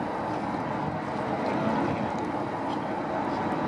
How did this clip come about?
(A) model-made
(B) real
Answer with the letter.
B